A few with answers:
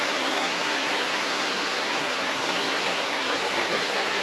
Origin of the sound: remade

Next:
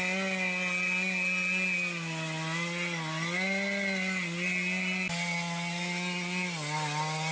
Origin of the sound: recorded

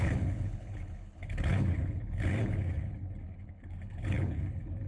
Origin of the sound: remade